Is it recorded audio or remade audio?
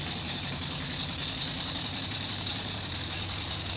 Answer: remade